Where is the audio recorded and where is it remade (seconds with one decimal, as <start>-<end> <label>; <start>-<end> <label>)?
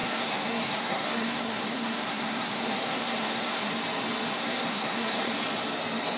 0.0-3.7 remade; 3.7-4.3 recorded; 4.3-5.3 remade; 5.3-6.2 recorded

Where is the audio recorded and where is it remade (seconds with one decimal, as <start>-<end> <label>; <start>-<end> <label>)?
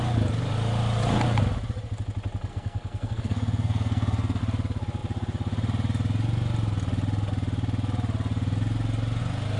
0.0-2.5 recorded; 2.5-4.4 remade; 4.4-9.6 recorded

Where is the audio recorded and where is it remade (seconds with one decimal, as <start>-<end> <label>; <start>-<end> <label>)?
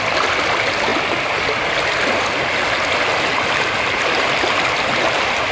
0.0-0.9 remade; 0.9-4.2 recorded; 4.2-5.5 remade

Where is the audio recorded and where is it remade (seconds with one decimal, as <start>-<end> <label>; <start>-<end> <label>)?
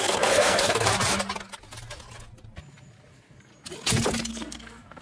0.0-0.9 remade; 0.9-3.1 recorded; 3.1-3.5 remade; 3.5-4.3 recorded; 4.3-5.0 remade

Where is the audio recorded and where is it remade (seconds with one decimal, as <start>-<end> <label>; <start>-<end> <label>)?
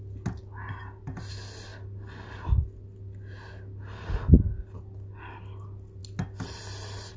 0.0-7.2 recorded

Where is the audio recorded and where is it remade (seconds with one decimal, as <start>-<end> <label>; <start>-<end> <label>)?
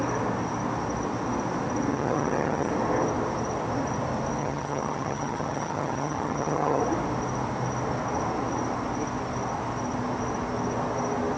0.0-1.9 recorded; 1.9-2.7 remade; 2.7-4.4 recorded; 4.4-6.8 remade; 6.8-11.4 recorded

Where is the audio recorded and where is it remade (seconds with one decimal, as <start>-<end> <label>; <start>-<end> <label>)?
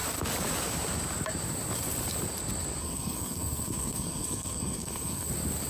0.0-2.8 recorded; 2.8-5.3 remade; 5.3-5.7 recorded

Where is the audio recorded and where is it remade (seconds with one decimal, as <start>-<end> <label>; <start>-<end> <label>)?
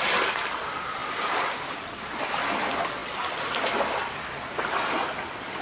0.0-5.6 recorded